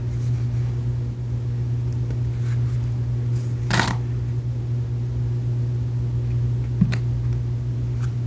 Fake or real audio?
real